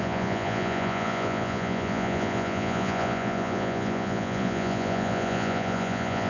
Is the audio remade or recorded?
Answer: remade